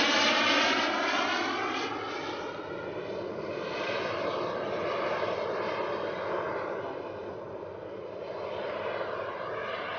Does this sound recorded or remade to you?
recorded